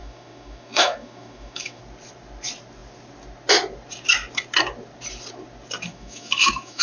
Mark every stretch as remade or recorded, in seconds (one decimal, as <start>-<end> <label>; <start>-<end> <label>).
0.0-1.8 remade; 1.8-5.9 recorded; 5.9-6.8 remade